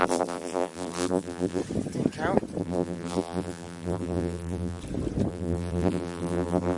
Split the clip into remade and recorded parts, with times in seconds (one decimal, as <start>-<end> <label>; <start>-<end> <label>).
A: 0.0-1.6 remade; 1.6-2.6 recorded; 2.6-4.8 remade; 4.8-5.3 recorded; 5.3-6.8 remade